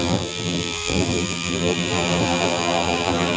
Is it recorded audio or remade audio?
remade